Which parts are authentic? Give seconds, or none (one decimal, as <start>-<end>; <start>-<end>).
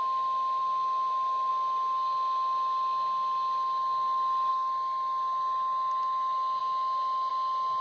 0.0-7.8